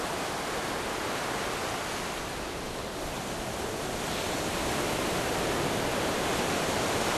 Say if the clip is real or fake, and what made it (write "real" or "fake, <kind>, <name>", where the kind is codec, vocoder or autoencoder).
real